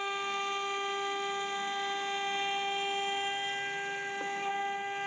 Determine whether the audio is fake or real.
real